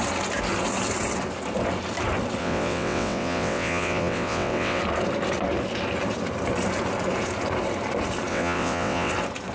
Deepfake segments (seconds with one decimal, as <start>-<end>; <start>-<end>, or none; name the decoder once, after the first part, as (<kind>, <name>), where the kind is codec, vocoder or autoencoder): 2.4-4.8 (vocoder, WaveNeXt); 8.3-9.1